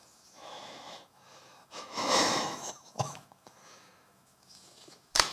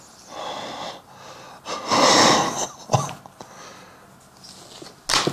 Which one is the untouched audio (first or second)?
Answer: second